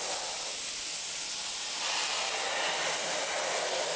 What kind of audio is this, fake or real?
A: real